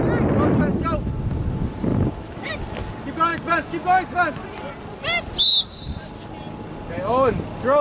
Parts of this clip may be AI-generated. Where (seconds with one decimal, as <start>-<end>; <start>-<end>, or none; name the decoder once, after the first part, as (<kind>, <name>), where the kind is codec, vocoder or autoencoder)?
1.9-2.5 (autoencoder, DAC-VAE)